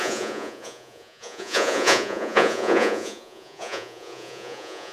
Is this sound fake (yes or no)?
yes